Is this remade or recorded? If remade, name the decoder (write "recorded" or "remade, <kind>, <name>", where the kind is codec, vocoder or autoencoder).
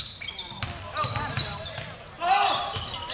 recorded